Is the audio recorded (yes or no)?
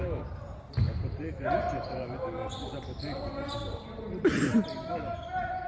no